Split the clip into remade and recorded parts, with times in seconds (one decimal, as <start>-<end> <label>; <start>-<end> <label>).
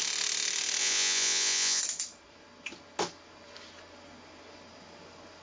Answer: 0.0-0.8 recorded; 0.8-1.8 remade; 1.8-5.4 recorded